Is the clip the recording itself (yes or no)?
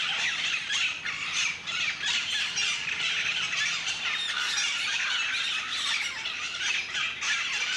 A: yes